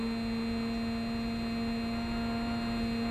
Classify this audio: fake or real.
real